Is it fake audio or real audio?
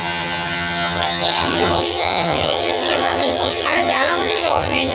fake